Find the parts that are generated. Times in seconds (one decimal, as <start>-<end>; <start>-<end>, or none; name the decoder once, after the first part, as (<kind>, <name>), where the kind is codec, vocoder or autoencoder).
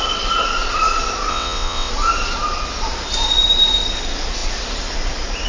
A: 1.3-1.9 (vocoder, WaveNeXt)